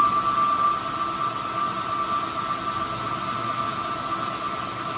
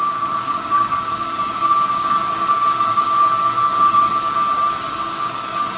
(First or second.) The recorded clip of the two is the first